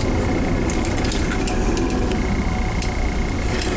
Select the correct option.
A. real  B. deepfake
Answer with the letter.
A